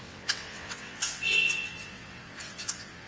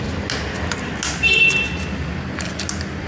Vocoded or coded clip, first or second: first